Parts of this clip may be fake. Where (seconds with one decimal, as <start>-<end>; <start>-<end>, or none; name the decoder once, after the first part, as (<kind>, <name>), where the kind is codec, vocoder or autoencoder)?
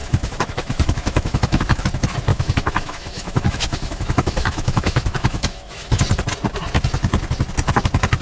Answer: 0.0-1.8 (autoencoder, DAC-VAE); 2.3-6.0